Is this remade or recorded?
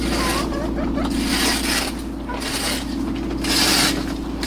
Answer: recorded